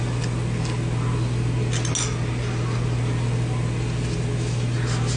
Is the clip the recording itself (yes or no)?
yes